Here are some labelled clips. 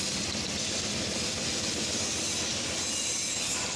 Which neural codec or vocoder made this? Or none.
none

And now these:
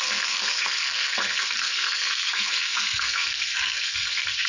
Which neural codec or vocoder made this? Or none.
codec, SNAC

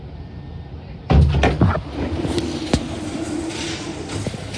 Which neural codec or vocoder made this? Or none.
none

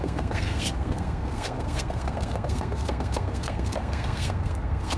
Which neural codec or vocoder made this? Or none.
codec, SNAC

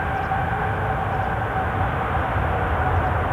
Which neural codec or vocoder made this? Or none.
none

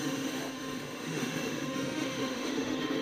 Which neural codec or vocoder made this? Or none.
autoencoder, DAC-VAE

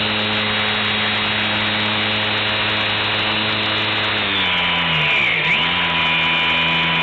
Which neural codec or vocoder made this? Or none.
none